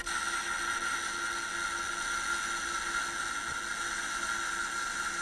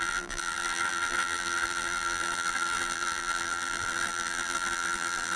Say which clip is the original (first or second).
first